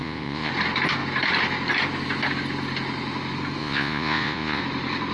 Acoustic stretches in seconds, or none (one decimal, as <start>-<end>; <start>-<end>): 0.5-3.6; 4.6-5.1